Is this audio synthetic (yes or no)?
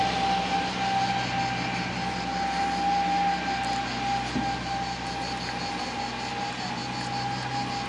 no